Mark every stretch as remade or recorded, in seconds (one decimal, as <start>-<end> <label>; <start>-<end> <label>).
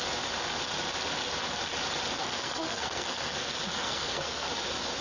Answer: 0.0-2.2 recorded; 2.2-4.5 remade; 4.5-5.0 recorded